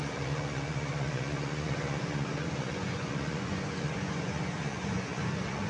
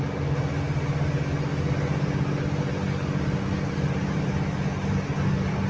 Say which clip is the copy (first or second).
first